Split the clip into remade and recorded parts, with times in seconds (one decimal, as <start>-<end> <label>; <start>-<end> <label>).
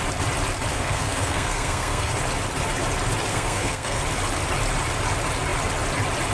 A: 0.0-0.7 recorded; 0.7-2.1 remade; 2.1-3.3 recorded; 3.3-4.0 remade; 4.0-6.3 recorded